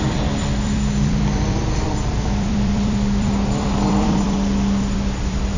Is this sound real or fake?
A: fake